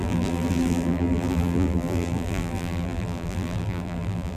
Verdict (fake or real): fake